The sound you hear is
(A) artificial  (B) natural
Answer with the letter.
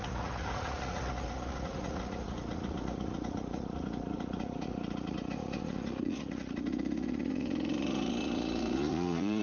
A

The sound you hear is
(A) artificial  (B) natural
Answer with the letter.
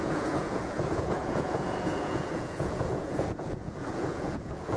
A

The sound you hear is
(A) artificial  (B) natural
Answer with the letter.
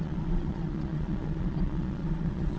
A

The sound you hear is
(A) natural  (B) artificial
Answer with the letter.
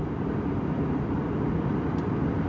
A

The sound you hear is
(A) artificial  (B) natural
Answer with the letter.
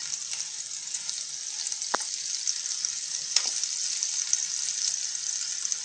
B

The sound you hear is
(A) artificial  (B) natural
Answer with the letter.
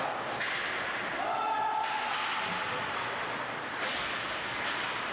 B